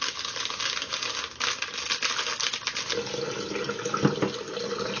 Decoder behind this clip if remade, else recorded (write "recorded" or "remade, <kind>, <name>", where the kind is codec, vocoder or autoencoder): recorded